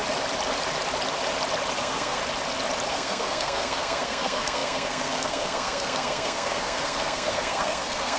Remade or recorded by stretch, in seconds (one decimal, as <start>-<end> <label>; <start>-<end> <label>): 0.0-1.8 recorded; 1.8-2.2 remade; 2.2-2.9 recorded; 2.9-8.2 remade